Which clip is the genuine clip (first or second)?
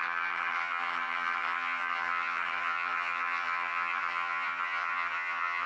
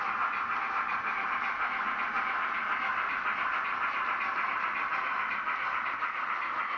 second